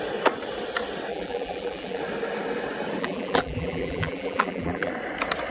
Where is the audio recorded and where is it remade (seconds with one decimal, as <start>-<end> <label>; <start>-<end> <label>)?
0.0-1.1 recorded; 1.1-2.0 remade; 2.0-3.0 recorded; 3.0-4.9 remade; 4.9-5.5 recorded